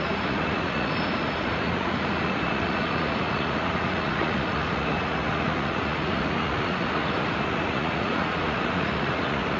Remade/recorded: remade